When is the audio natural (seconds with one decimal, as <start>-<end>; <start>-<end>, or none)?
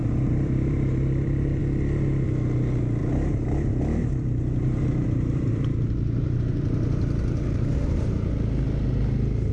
1.6-3.0; 8.3-9.5